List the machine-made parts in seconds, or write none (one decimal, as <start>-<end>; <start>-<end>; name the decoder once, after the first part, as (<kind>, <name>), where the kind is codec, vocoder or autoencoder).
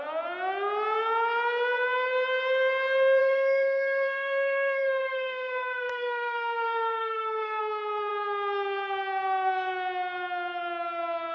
3.2-7.6 (codec, SNAC)